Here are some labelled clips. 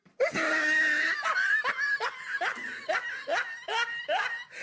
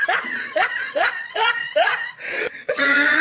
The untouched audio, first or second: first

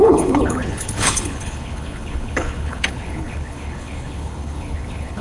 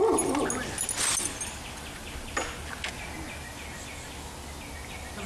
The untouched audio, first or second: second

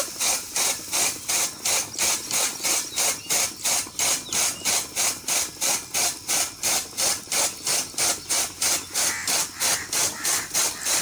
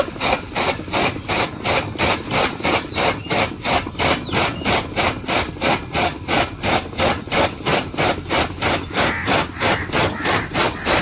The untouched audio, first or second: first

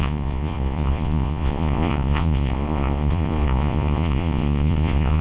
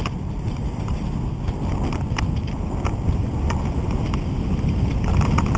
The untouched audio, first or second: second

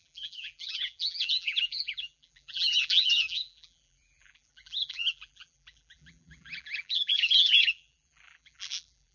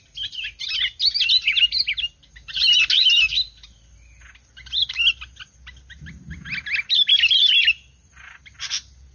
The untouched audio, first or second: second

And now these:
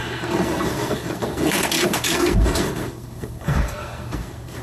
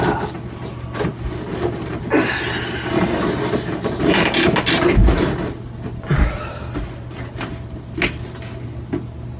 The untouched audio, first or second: second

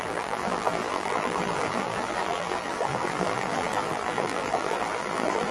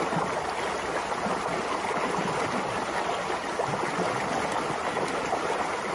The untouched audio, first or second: second